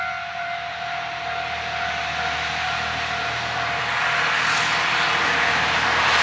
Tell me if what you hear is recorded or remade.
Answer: recorded